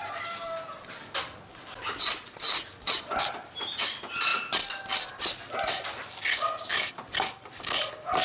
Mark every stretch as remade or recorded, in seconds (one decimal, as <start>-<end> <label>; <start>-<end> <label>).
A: 0.0-8.2 recorded